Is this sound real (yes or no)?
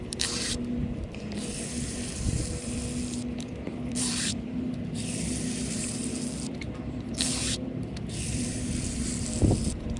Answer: no